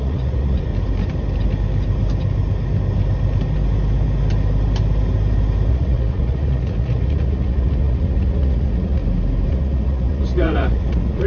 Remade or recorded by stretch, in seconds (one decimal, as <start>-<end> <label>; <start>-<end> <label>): 0.0-0.7 remade; 0.7-5.7 recorded; 5.7-9.0 remade; 9.0-9.5 recorded; 9.5-11.3 remade